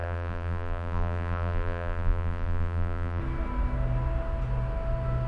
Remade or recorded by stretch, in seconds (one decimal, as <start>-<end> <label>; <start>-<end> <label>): 0.0-3.2 remade; 3.2-5.3 recorded